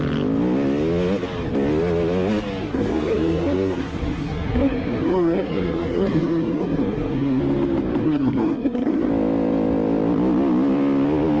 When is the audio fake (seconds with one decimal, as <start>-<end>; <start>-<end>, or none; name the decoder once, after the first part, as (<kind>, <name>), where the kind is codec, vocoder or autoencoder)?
2.6-7.4 (codec, SNAC); 8.0-9.1